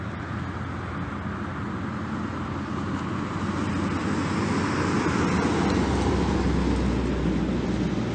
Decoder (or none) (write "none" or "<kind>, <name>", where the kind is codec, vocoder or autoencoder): none